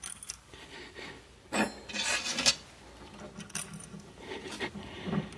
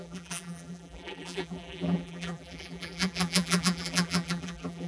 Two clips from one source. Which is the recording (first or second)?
first